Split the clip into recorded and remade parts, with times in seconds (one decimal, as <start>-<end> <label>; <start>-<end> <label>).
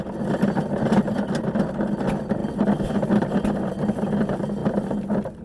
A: 0.0-5.4 recorded